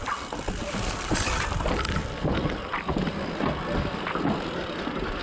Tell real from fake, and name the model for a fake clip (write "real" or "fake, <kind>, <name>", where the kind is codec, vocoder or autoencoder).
fake, vocoder, BigVGAN v2